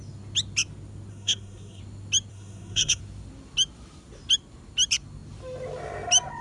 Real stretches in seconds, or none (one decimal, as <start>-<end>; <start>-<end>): 0.0-1.1; 1.8-2.3; 3.0-6.4

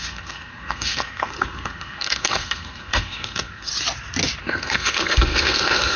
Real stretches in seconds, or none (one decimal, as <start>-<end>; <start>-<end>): 3.7-4.4

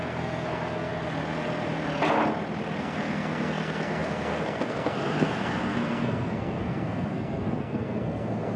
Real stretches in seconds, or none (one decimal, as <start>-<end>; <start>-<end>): 0.9-2.8

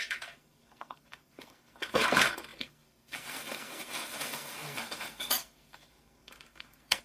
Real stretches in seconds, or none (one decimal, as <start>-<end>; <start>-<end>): none

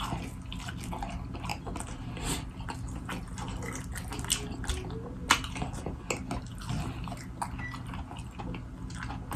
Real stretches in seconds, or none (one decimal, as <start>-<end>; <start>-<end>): 0.0-9.4